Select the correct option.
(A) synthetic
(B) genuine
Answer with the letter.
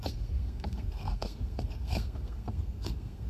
A